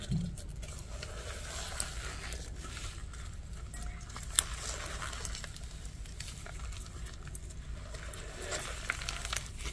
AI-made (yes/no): no